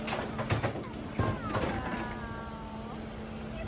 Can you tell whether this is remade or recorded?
recorded